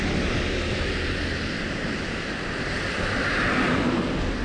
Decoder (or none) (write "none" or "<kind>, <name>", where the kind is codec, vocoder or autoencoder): none